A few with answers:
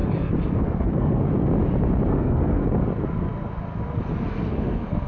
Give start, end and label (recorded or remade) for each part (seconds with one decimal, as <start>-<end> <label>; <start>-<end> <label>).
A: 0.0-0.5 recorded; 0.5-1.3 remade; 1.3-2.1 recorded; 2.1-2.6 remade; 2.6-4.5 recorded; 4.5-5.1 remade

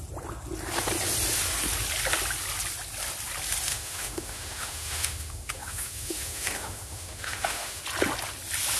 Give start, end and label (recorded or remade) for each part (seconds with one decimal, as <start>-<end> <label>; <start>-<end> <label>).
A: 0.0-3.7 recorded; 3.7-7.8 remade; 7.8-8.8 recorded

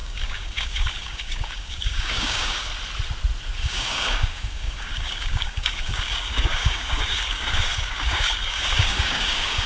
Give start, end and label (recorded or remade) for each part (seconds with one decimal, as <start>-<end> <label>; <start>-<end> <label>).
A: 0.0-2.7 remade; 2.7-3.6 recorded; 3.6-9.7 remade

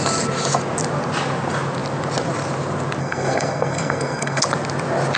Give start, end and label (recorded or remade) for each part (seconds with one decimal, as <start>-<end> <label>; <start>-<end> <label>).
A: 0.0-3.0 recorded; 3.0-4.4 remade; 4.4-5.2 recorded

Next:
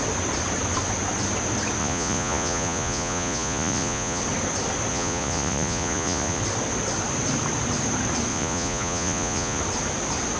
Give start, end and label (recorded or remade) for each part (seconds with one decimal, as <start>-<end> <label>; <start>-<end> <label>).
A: 0.0-1.8 recorded; 1.8-4.2 remade; 4.2-4.9 recorded; 4.9-6.4 remade; 6.4-8.3 recorded; 8.3-9.6 remade; 9.6-10.4 recorded